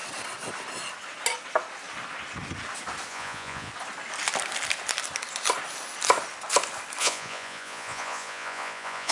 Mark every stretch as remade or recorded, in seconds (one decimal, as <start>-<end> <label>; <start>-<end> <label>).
0.0-3.1 recorded; 3.1-3.7 remade; 3.7-7.0 recorded; 7.0-9.1 remade